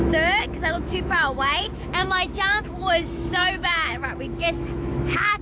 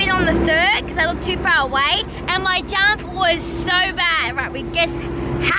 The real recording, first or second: second